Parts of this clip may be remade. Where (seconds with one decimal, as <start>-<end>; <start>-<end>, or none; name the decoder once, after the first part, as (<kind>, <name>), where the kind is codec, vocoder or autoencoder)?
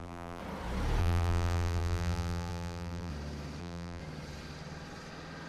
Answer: 0.0-0.4 (vocoder, BigVGAN v2); 1.0-3.1; 3.6-4.0